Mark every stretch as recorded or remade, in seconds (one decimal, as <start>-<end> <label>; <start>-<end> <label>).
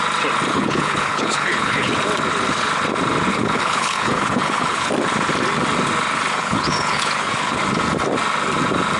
0.0-0.5 recorded; 0.5-1.9 remade; 1.9-3.3 recorded; 3.3-4.9 remade; 4.9-6.4 recorded; 6.4-7.6 remade; 7.6-9.0 recorded